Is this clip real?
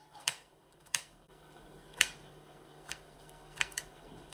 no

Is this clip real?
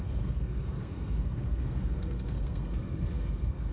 no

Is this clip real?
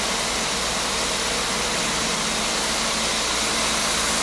yes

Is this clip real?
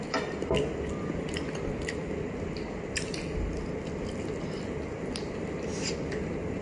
yes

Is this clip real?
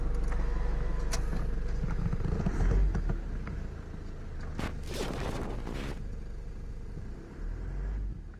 yes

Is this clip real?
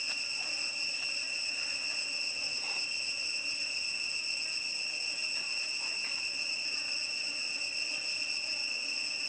yes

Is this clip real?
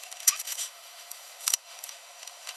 no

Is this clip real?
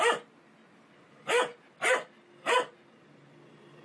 yes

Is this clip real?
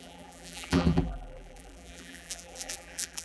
no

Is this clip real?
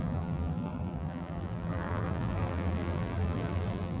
no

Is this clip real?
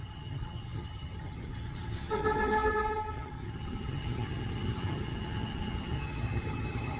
no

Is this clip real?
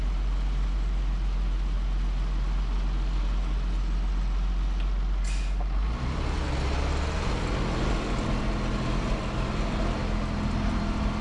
yes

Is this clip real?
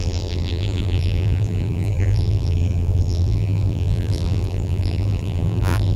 no